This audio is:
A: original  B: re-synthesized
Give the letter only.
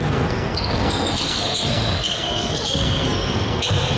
B